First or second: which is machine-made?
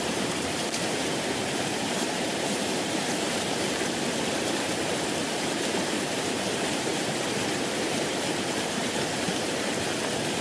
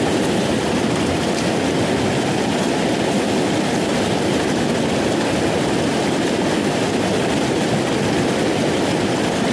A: first